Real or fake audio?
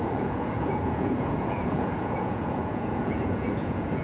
fake